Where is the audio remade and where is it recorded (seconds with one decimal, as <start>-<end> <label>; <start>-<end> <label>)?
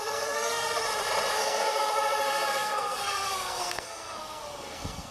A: 0.0-0.8 remade; 0.8-1.3 recorded; 1.3-5.1 remade